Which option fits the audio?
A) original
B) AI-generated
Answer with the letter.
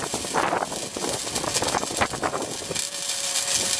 A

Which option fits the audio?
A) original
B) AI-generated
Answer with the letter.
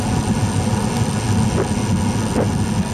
A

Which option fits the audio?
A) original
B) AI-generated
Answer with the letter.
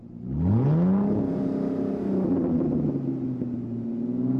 A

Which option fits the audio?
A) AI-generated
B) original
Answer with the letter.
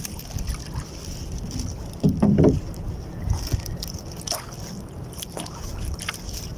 B